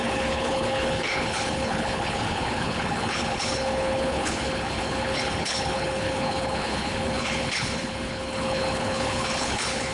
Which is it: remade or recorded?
remade